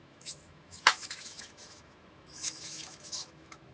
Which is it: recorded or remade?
remade